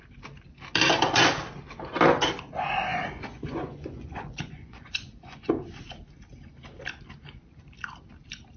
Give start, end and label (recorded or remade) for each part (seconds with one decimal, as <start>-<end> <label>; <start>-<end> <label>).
0.0-2.9 recorded; 2.9-5.5 remade; 5.5-8.6 recorded